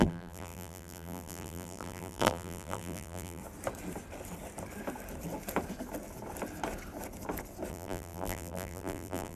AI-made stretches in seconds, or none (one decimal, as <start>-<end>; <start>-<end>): 0.0-3.4; 7.7-9.4